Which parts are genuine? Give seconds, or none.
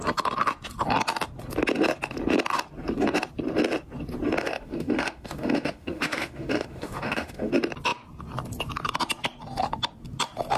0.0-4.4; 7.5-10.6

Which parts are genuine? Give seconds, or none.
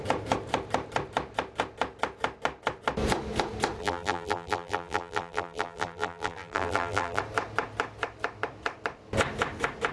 0.0-3.8; 7.2-9.9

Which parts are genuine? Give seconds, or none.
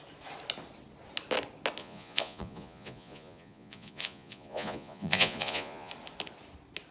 0.0-1.8; 5.9-6.9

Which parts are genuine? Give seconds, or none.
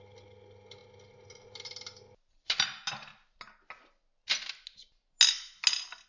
0.0-6.1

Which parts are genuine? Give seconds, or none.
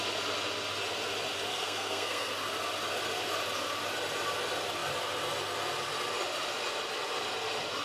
0.0-1.5; 2.3-7.8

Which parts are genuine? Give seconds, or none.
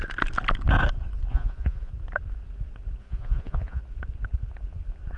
0.0-1.3; 1.9-3.0; 3.8-5.2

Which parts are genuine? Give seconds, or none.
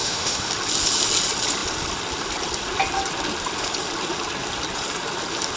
0.5-5.6